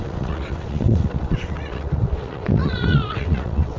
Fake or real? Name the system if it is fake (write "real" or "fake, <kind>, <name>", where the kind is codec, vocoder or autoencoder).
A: fake, vocoder, WaveNeXt